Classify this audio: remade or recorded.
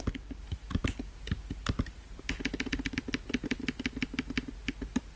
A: recorded